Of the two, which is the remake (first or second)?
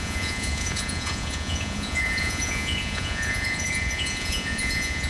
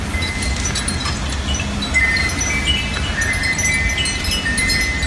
first